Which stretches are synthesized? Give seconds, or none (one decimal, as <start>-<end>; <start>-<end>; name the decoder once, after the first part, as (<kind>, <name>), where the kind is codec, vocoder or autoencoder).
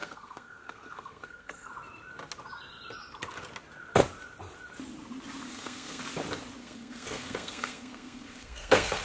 0.0-1.7 (codec, SNAC); 5.5-6.0; 6.6-9.0